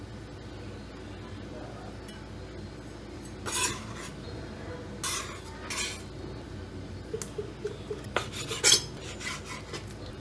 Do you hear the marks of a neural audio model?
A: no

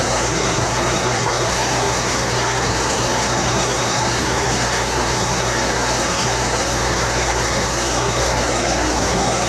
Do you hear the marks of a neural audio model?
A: yes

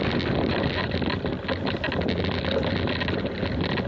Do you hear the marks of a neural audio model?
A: no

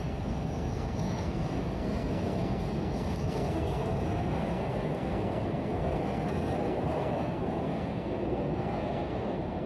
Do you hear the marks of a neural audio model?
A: yes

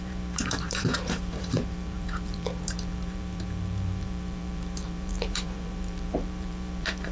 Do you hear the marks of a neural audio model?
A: yes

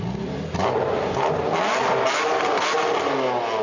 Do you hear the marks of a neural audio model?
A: no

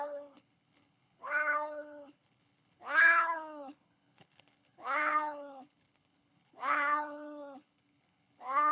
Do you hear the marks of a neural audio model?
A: yes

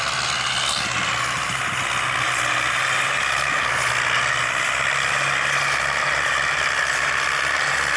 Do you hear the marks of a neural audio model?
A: no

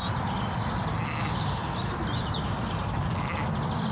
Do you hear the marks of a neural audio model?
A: no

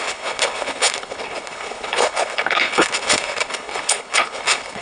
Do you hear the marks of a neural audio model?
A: yes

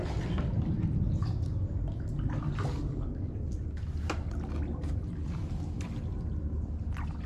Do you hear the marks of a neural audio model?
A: no